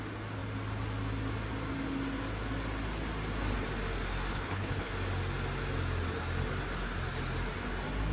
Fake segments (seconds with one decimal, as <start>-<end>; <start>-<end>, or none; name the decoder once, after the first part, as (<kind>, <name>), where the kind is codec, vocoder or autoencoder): 4.3-4.9 (codec, HILCodec)